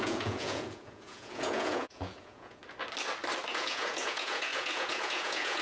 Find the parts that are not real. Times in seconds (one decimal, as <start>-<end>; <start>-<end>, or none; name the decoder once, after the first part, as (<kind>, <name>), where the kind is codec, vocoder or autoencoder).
0.0-2.6 (vocoder, Vocos); 3.5-5.6